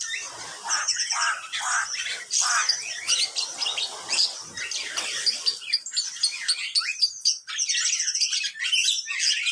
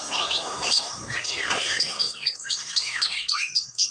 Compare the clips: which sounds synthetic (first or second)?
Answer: second